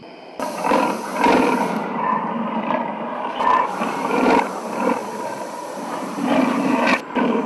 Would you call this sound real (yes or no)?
no